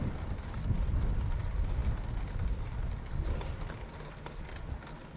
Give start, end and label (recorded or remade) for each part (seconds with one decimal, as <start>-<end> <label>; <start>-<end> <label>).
0.0-5.2 recorded

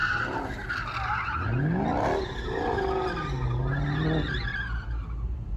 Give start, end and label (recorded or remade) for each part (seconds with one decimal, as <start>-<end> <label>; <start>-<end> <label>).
0.0-5.6 recorded

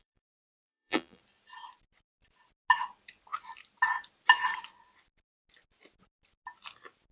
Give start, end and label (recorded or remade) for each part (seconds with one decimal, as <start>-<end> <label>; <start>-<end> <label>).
0.0-1.2 remade; 1.2-7.1 recorded

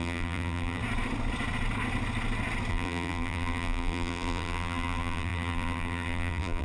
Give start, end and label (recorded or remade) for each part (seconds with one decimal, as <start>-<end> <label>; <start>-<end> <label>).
0.0-0.8 remade; 0.8-2.7 recorded; 2.7-6.6 remade

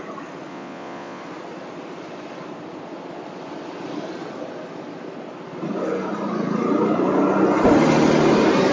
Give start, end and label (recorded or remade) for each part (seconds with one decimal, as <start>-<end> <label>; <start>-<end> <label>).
0.0-0.5 recorded; 0.5-1.2 remade; 1.2-8.7 recorded

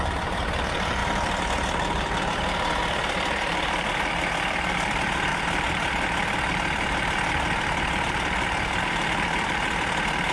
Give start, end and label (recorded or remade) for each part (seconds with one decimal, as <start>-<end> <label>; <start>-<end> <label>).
0.0-10.3 remade

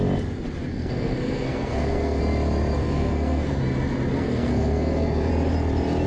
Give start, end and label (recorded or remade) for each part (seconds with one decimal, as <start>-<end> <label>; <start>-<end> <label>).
0.0-0.7 recorded; 0.7-2.2 remade; 2.2-2.8 recorded; 2.8-3.6 remade; 3.6-4.1 recorded; 4.1-5.3 remade; 5.3-6.1 recorded

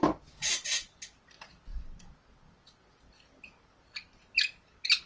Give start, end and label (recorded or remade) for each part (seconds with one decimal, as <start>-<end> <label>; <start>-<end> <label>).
0.0-5.1 recorded